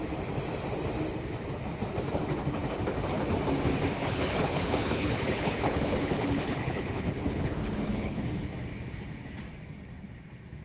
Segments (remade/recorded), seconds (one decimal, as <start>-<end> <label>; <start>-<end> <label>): 0.0-4.0 recorded; 4.0-8.2 remade; 8.2-10.6 recorded